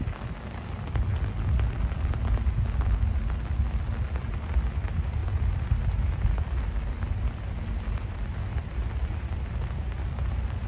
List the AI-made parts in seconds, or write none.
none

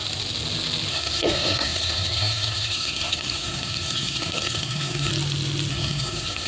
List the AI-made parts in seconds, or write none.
0.9-5.1; 5.7-6.5

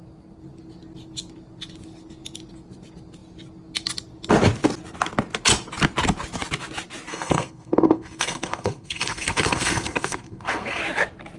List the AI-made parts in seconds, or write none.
7.1-10.8

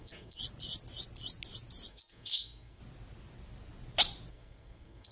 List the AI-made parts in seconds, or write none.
0.0-0.4; 1.9-2.8; 4.3-5.1

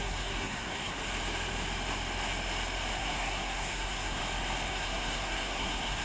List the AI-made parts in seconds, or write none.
0.0-0.9; 3.0-4.2; 4.7-6.0

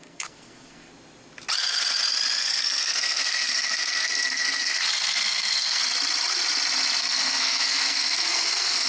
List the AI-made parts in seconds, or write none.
0.0-0.9; 2.4-5.8; 7.0-8.9